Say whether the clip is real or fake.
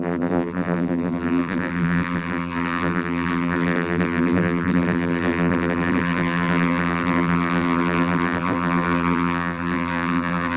fake